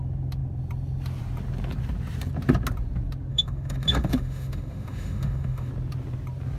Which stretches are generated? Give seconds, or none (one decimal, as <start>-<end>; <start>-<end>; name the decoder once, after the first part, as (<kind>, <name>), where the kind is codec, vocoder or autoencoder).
3.3-5.7 (autoencoder, DAC-VAE)